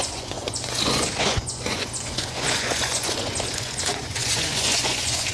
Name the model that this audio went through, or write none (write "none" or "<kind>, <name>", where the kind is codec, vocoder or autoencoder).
vocoder, Vocos